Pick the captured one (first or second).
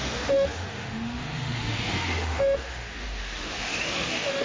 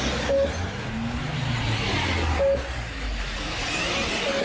second